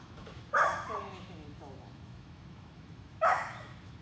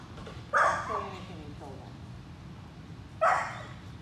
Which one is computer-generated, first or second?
first